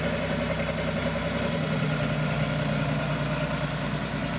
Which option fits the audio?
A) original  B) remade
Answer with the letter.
A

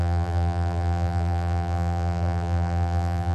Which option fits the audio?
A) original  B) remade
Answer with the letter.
B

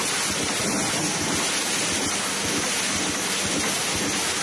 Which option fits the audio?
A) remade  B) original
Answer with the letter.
B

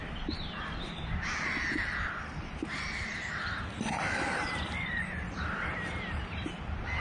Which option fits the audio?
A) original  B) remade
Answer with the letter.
B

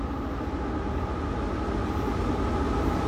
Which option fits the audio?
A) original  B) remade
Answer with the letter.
A